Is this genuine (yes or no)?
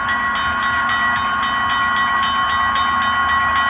yes